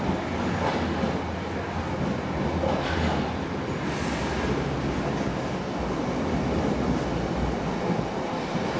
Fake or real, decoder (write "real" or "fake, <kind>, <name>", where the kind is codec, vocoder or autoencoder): real